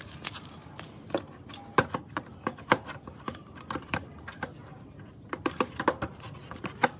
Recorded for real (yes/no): yes